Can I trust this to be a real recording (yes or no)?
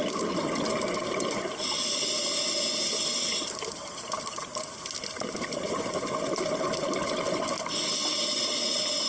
yes